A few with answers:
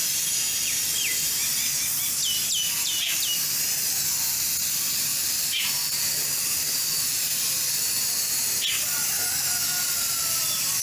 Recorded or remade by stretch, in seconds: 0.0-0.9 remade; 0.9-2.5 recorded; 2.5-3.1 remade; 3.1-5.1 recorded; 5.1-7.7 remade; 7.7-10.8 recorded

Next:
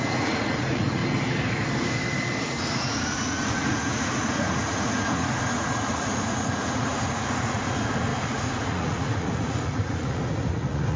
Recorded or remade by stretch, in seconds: 0.0-1.0 remade; 1.0-2.4 recorded; 2.4-11.0 remade

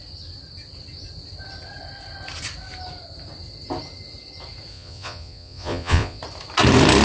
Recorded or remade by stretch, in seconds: 0.0-4.7 recorded; 4.7-6.2 remade; 6.2-7.0 recorded